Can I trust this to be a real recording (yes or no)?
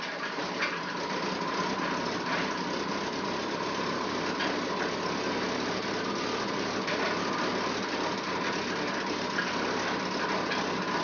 yes